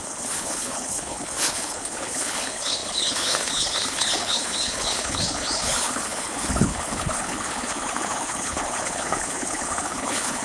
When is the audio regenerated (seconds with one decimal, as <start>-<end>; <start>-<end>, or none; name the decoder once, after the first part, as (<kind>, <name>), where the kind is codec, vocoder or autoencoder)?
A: 0.0-10.4 (codec, HILCodec)